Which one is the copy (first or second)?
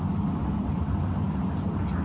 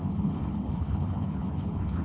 second